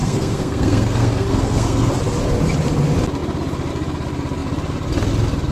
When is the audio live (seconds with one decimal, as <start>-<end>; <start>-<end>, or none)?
1.9-5.5